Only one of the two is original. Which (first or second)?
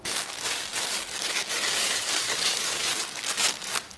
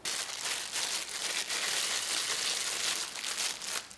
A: second